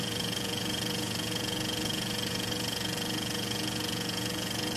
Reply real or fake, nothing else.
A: fake